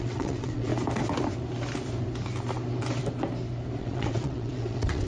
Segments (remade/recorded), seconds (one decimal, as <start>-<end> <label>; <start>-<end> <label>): 0.0-0.7 remade; 0.7-3.8 recorded; 3.8-5.1 remade